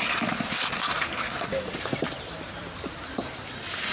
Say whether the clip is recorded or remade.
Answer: recorded